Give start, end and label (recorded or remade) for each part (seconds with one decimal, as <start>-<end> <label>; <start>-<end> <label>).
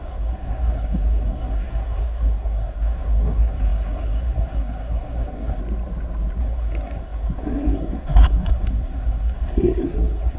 0.0-5.6 remade; 5.6-6.4 recorded; 6.4-10.4 remade